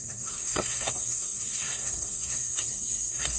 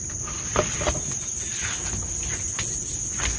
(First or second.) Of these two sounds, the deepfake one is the first